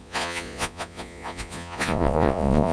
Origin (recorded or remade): remade